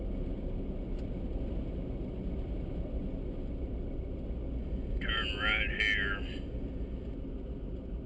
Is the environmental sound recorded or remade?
recorded